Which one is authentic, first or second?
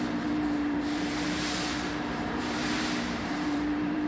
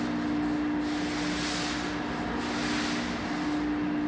second